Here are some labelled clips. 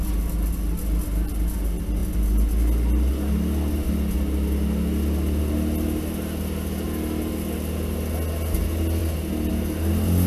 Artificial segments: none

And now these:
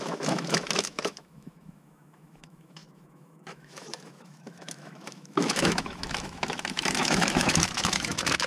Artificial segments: 0.0-8.5 (autoencoder, DAC-VAE)

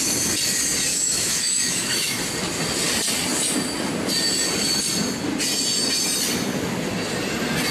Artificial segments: 0.9-2.2 (autoencoder, DAC-VAE)